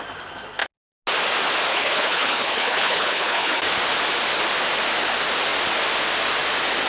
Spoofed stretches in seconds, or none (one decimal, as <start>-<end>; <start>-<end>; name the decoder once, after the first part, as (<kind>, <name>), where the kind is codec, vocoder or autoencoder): 1.7-3.6 (codec, HILCodec)